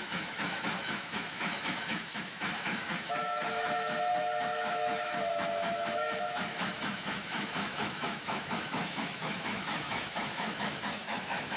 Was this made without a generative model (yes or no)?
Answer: no